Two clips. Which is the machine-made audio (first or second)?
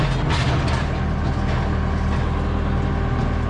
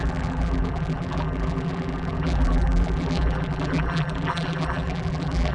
second